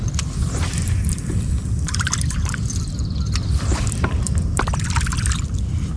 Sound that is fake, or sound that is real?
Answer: fake